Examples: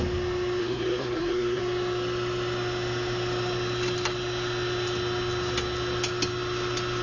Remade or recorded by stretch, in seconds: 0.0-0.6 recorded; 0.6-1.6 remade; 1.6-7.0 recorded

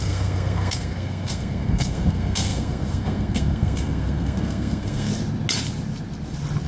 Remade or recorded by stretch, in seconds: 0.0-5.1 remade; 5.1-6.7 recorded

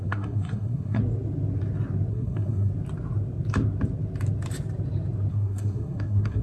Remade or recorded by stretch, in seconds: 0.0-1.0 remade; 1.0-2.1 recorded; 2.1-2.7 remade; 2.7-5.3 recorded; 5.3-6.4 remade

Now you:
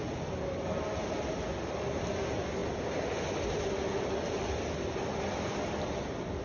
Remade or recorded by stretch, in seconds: 0.0-6.4 recorded

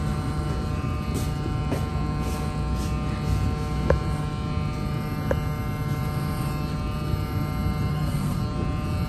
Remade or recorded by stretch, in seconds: 0.0-7.9 recorded; 7.9-8.4 remade; 8.4-9.1 recorded

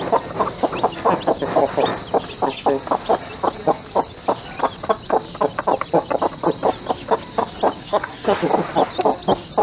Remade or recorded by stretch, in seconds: 0.0-7.8 recorded; 7.8-8.4 remade; 8.4-9.6 recorded

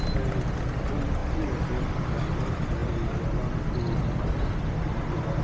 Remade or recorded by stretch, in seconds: 0.0-5.4 recorded

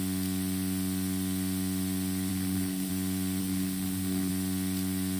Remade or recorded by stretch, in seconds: 0.0-2.3 recorded; 2.3-2.9 remade; 2.9-3.4 recorded; 3.4-4.3 remade; 4.3-5.2 recorded